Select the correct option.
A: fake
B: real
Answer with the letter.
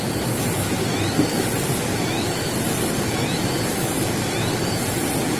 B